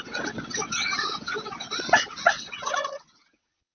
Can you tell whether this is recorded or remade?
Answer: remade